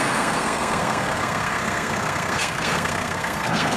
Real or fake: fake